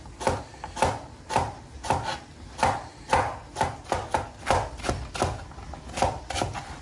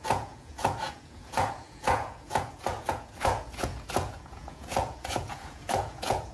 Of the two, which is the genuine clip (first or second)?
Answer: first